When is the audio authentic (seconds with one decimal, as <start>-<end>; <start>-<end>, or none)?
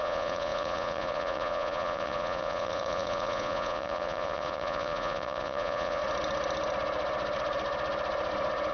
6.0-8.7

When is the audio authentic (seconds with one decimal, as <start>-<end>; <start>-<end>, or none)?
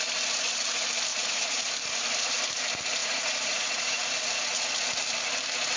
0.0-1.1; 1.7-3.0; 4.0-5.8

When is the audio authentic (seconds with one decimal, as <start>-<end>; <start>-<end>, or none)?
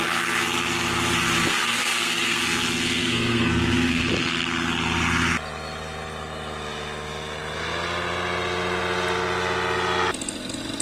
0.0-1.5; 2.4-3.0; 4.0-10.8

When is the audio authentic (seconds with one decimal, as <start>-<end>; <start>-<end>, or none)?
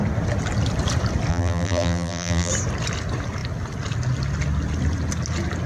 0.0-1.3; 2.5-5.7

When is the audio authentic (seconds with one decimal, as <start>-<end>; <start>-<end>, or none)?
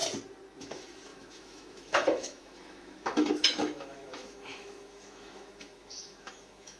0.0-0.6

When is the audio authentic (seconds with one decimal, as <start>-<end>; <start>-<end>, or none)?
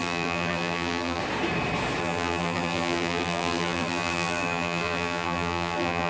1.2-2.0